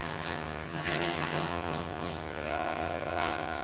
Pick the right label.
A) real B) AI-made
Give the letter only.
B